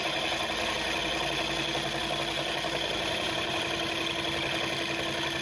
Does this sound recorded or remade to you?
recorded